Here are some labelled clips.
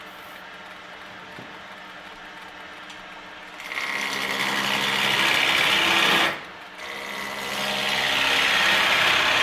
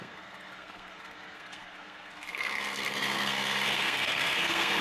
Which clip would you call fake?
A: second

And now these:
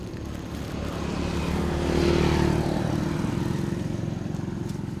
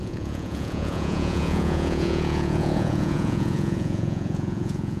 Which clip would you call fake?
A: second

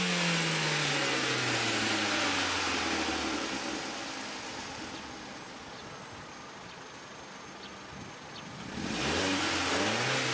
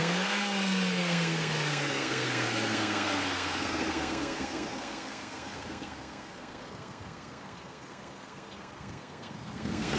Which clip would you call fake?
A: second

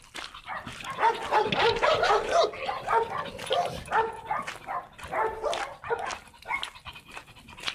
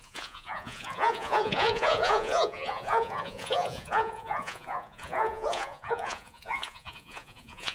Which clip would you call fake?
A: second